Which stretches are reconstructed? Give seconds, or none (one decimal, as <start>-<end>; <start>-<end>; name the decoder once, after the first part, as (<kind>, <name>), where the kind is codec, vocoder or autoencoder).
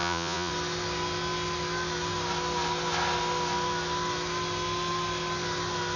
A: 0.0-0.5 (vocoder, Vocos)